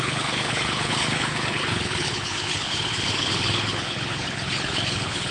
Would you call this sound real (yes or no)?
no